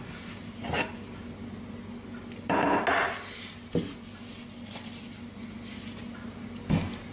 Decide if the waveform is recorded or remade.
recorded